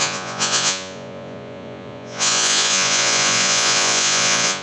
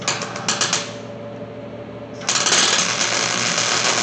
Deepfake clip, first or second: first